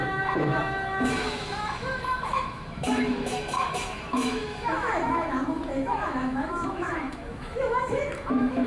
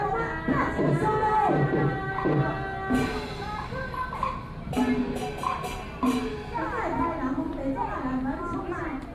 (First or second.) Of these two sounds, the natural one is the second